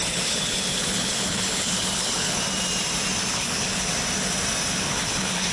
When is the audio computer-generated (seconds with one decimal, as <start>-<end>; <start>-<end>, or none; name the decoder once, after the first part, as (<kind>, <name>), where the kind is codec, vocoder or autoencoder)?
0.0-2.4 (codec, HILCodec); 3.3-3.9; 4.8-5.5